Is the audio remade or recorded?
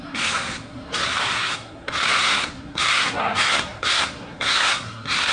remade